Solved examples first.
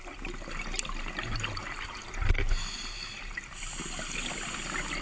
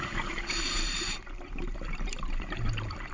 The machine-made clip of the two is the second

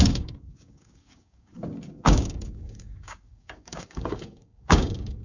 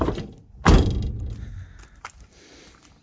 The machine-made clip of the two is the first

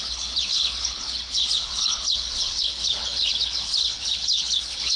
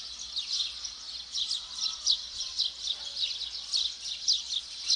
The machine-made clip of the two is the first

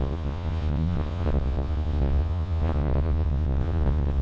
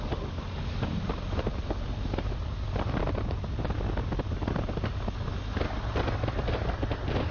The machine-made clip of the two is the first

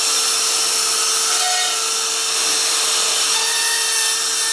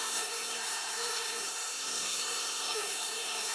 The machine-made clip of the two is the second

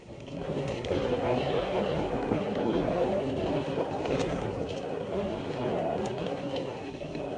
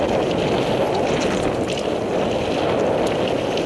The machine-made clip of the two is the first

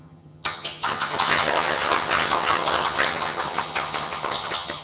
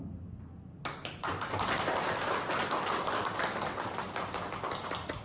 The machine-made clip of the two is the first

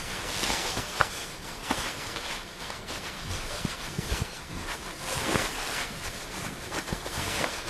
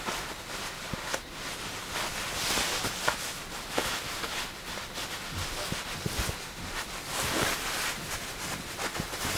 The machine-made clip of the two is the first